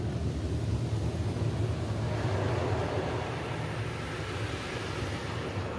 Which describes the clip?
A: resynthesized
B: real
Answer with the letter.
B